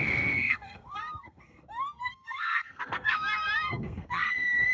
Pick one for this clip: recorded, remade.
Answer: remade